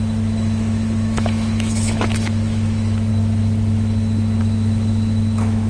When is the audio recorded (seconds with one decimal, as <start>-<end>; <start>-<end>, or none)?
3.1-4.4